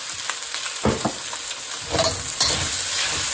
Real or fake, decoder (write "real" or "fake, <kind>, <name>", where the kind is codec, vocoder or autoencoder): real